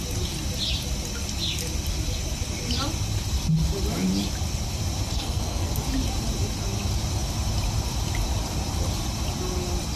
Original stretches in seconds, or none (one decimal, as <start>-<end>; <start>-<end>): 0.0-5.1; 5.7-10.0